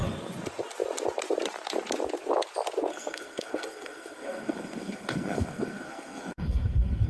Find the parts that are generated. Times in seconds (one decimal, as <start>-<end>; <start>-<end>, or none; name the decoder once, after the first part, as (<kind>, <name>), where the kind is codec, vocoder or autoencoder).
2.9-7.1 (codec, SNAC)

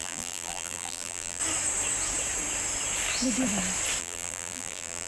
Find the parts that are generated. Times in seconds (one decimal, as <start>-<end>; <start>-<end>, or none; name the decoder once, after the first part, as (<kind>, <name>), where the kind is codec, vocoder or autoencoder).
0.0-1.4 (vocoder, BigVGAN v2); 4.0-5.1

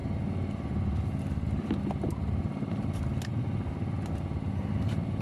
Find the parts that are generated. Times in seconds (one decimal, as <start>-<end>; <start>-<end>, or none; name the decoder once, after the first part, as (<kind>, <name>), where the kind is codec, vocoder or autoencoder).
none

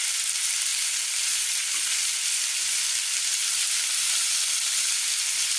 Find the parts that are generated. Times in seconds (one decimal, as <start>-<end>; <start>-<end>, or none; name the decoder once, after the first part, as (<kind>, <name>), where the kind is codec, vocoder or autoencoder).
none

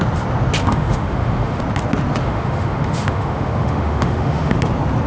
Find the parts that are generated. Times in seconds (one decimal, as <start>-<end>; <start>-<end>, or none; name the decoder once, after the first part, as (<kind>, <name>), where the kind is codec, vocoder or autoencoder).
0.6-1.6 (autoencoder, DAC-VAE); 2.2-4.6

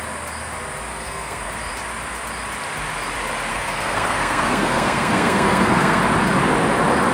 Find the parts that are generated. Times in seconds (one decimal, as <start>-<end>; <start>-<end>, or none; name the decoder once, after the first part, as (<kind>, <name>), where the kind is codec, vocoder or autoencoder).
0.9-1.5 (codec, SNAC); 3.5-6.0